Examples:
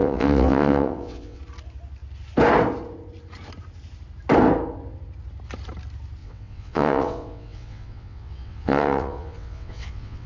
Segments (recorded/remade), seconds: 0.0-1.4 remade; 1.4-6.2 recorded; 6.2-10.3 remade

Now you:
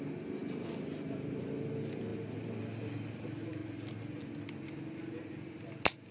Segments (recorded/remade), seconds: 0.0-6.1 recorded

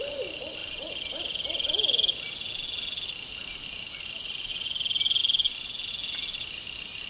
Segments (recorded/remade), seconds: 0.0-7.1 recorded

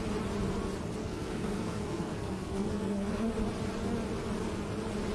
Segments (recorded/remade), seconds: 0.0-1.0 recorded; 1.0-3.3 remade; 3.3-5.1 recorded

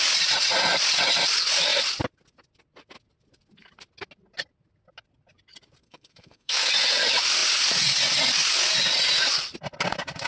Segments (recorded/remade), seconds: 0.0-5.8 recorded; 5.8-6.7 remade; 6.7-10.3 recorded

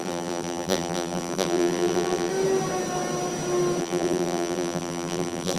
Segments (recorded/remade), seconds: 0.0-2.3 remade; 2.3-3.8 recorded; 3.8-5.6 remade

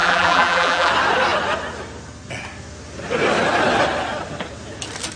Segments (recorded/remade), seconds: 0.0-0.9 remade; 0.9-5.2 recorded